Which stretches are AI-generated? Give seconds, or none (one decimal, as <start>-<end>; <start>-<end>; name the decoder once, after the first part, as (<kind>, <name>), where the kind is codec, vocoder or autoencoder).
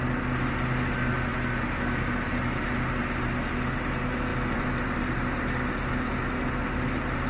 none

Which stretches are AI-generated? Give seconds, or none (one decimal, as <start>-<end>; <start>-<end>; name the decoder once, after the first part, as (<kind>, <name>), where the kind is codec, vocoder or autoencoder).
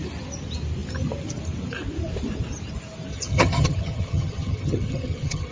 3.1-5.5 (vocoder, HiFi-GAN)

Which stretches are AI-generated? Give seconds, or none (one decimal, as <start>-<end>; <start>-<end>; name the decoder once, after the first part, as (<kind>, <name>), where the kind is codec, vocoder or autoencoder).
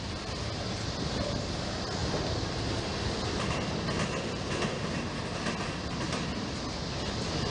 none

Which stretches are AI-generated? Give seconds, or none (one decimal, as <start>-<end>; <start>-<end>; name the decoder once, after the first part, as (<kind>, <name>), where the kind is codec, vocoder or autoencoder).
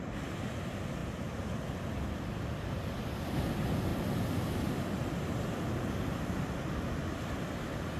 1.0-2.6 (vocoder, BigVGAN v2)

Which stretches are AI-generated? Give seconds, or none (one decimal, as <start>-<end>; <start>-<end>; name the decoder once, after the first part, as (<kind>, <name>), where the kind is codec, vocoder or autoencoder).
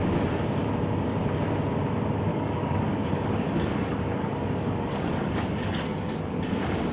2.3-6.4 (codec, DAC)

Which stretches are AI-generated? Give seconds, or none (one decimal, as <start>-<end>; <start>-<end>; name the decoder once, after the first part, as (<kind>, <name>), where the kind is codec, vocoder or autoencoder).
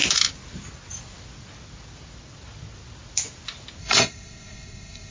3.8-5.1 (codec, SNAC)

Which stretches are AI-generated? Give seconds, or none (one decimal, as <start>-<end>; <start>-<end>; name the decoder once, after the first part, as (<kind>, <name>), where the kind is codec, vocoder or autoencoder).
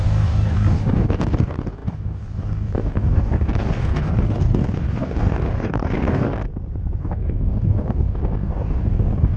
0.0-6.5 (codec, DAC); 7.0-9.4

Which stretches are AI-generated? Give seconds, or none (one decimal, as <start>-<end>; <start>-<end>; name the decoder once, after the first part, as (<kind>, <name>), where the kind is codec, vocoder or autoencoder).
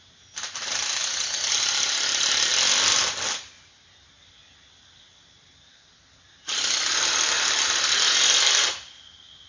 none